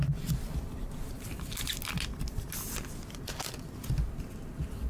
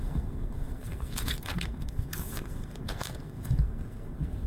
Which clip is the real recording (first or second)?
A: first